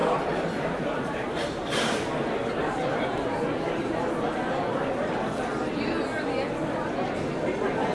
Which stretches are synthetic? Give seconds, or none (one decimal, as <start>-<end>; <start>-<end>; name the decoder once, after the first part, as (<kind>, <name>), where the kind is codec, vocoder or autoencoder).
0.0-4.7 (vocoder, BigVGAN v2)